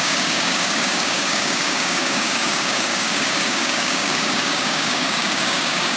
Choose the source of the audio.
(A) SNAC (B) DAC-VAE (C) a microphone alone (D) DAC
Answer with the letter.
D